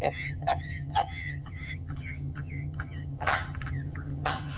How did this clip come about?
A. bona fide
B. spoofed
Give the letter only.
B